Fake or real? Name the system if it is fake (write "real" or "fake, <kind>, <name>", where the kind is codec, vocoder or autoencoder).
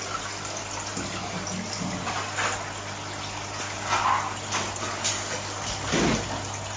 real